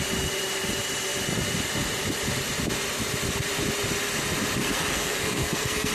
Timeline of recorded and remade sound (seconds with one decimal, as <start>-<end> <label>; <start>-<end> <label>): 0.0-4.6 recorded; 4.6-5.9 remade